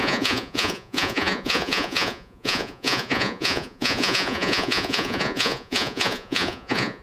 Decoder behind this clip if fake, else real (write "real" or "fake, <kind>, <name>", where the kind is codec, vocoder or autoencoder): fake, vocoder, Vocos